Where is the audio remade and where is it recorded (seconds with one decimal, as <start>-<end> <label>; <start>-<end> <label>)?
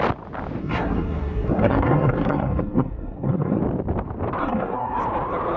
0.0-0.6 recorded; 0.6-3.6 remade; 3.6-4.4 recorded; 4.4-5.0 remade; 5.0-5.6 recorded